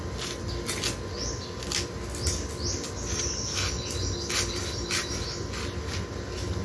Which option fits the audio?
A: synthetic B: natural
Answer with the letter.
B